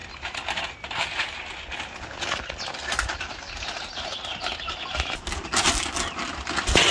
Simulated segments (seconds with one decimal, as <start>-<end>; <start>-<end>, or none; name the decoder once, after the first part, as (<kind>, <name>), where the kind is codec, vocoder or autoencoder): none